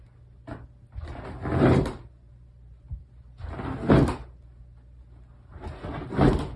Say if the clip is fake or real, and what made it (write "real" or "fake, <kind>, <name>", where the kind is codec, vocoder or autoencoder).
real